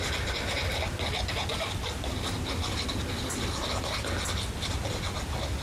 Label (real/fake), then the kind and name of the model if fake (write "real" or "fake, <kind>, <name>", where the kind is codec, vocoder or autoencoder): real